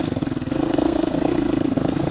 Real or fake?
fake